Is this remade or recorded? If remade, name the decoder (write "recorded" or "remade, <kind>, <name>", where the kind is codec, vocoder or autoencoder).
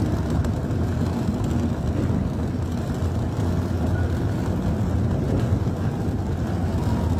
recorded